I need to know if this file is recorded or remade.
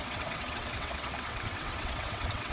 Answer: remade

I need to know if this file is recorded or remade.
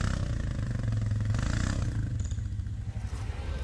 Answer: recorded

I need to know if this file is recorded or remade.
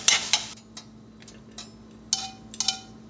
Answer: recorded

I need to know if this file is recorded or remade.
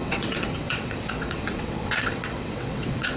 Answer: remade